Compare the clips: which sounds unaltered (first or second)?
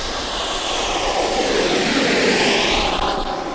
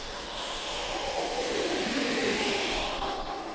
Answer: first